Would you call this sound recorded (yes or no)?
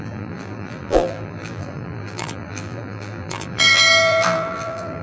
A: no